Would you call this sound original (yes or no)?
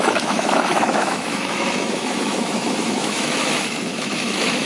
no